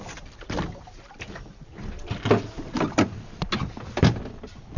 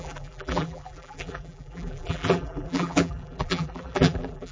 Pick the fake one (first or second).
second